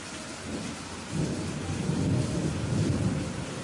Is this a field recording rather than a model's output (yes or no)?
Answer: yes